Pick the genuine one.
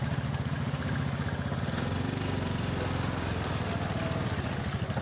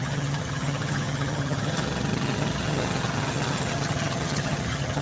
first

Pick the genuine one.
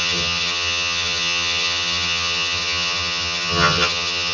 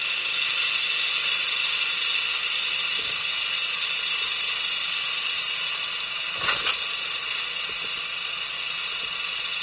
second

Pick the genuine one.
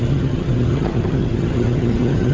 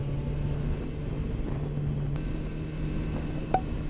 second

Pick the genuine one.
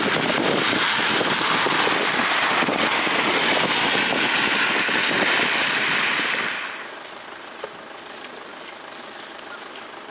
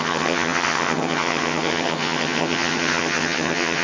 first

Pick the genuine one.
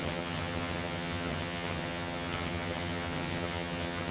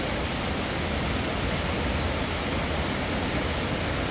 second